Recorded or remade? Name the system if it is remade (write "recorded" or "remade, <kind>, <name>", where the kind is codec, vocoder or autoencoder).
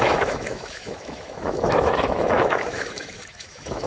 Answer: remade, autoencoder, DAC-VAE